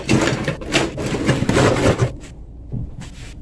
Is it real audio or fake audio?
real